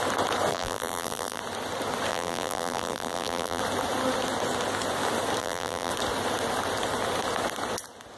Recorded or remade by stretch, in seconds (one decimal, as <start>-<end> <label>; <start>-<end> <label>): 0.0-0.5 recorded; 0.5-1.4 remade; 1.4-2.1 recorded; 2.1-3.6 remade; 3.6-5.4 recorded; 5.4-5.9 remade; 5.9-8.2 recorded

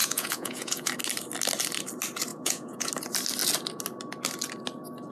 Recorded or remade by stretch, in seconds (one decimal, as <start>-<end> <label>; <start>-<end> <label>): 0.0-0.9 remade; 0.9-2.3 recorded; 2.3-2.9 remade; 2.9-5.1 recorded